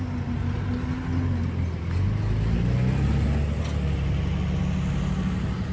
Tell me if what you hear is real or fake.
real